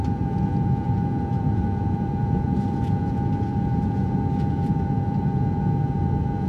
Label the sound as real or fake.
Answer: fake